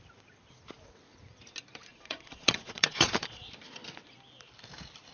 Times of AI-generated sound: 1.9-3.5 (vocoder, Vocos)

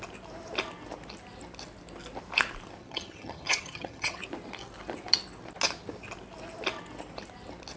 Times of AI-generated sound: 2.8-4.2 (vocoder, HiFi-GAN)

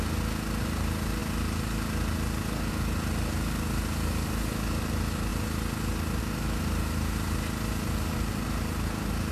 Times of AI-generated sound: none